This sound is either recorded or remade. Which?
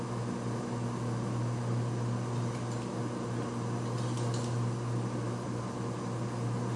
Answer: recorded